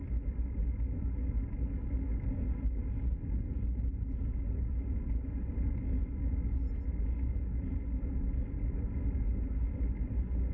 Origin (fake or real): real